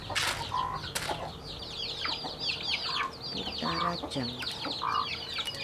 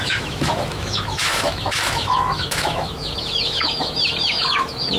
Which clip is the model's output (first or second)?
second